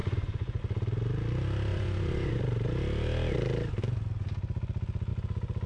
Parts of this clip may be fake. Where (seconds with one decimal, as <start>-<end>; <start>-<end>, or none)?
0.0-0.6; 1.7-2.4

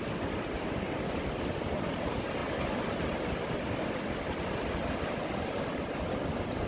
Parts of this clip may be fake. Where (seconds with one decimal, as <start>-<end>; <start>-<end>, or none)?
none

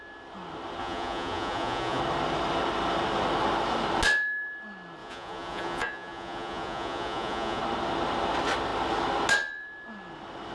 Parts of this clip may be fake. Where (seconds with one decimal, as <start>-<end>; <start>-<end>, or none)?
0.8-2.0; 5.0-7.6

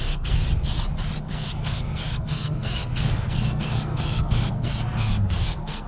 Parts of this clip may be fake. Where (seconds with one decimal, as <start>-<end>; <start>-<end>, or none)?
0.0-0.4; 1.2-5.9

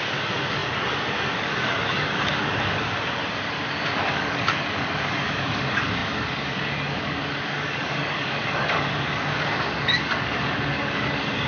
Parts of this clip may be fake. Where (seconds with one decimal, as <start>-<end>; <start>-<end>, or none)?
0.0-3.2; 4.1-11.5

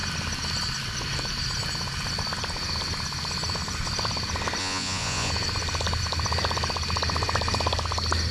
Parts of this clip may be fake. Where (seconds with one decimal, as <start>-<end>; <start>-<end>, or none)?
4.6-5.3

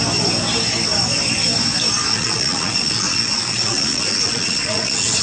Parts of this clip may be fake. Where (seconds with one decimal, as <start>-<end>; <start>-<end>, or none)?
2.1-5.2

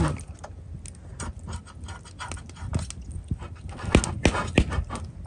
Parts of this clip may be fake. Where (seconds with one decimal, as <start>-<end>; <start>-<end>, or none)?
none